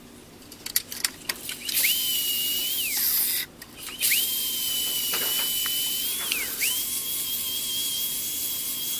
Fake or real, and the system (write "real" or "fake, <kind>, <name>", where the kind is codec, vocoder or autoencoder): real